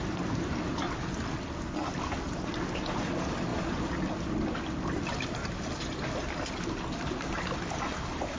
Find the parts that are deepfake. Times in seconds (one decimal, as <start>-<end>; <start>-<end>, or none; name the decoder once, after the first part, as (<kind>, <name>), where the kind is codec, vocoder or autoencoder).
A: none